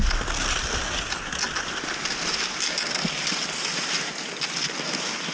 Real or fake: real